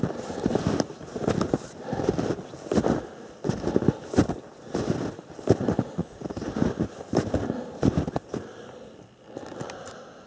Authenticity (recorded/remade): recorded